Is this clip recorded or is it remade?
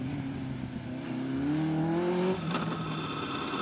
recorded